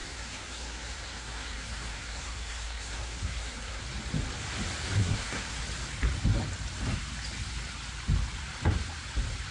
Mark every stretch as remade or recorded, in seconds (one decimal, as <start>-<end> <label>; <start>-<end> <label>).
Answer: 0.0-3.8 remade; 3.8-5.0 recorded; 5.0-5.6 remade; 5.6-9.5 recorded